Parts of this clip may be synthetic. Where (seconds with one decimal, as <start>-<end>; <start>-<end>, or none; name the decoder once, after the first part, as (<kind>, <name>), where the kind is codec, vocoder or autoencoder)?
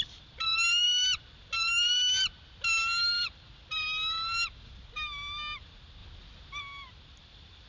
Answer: 0.0-2.0 (vocoder, BigVGAN v2); 5.6-6.0; 6.6-7.7